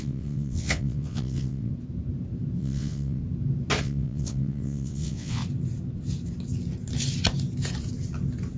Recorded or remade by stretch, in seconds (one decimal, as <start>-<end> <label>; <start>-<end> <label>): 0.0-1.7 remade; 1.7-2.6 recorded; 2.6-3.2 remade; 3.2-3.8 recorded; 3.8-5.4 remade; 5.4-8.6 recorded